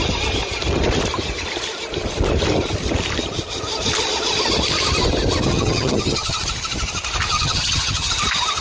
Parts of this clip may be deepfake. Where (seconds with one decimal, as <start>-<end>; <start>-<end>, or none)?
5.5-6.4; 7.3-8.1